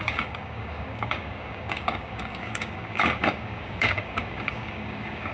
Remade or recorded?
remade